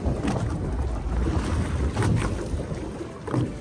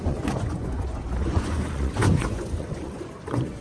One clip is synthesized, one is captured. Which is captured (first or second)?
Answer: first